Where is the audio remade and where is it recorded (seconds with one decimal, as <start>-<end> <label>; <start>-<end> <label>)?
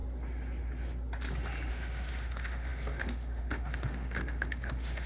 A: 0.0-1.7 recorded; 1.7-5.1 remade